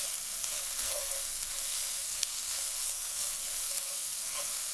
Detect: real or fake fake